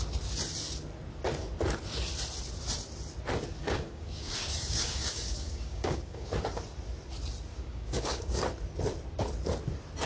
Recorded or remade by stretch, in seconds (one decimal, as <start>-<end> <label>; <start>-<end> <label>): 0.0-3.6 recorded; 3.6-6.3 remade; 6.3-7.5 recorded; 7.5-8.4 remade; 8.4-10.1 recorded